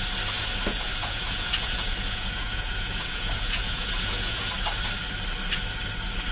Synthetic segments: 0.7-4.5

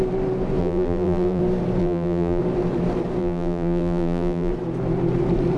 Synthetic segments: 0.6-1.4; 1.8-2.4; 3.2-4.5

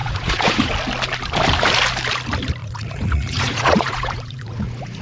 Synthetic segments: 0.0-0.7; 2.6-5.0

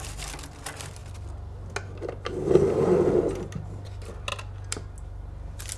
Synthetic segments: none